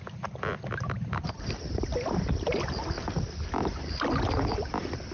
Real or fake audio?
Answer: real